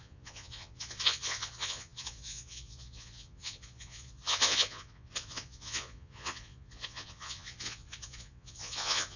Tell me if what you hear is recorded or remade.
remade